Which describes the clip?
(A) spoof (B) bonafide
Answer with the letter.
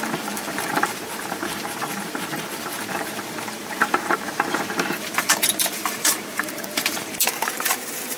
A